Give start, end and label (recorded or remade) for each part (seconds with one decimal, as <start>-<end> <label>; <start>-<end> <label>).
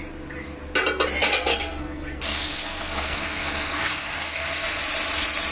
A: 0.0-1.5 recorded; 1.5-4.8 remade; 4.8-5.5 recorded